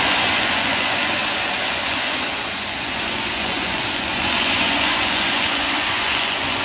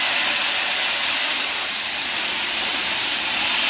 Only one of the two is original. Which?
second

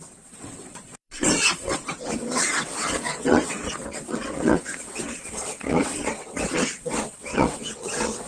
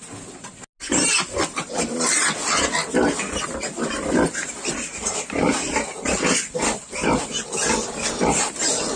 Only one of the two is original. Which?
second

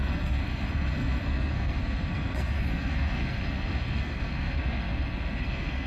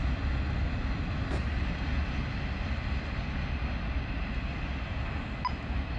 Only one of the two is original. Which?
second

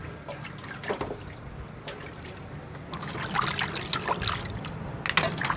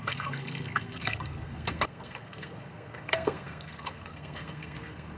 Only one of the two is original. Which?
first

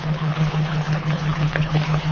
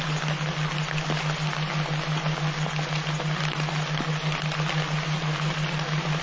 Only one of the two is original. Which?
second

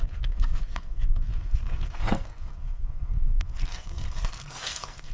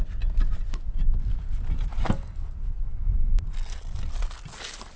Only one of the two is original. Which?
second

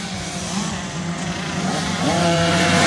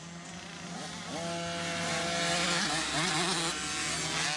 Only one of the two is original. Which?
second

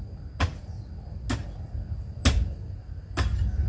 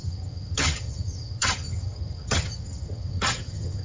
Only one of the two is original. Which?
first